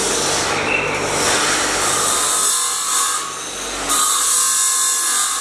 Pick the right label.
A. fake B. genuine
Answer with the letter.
B